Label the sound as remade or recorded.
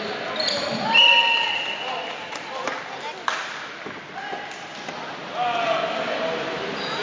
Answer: recorded